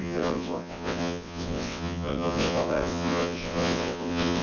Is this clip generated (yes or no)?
yes